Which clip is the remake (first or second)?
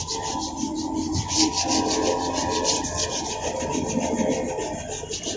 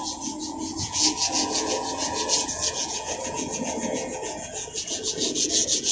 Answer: second